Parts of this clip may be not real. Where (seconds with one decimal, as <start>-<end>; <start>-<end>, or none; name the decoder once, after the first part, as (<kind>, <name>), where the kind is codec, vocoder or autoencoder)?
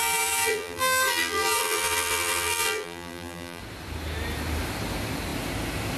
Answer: 0.0-3.6 (vocoder, BigVGAN v2)